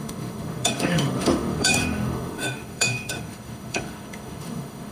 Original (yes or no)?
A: no